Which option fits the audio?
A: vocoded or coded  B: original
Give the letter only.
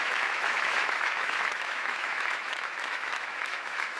A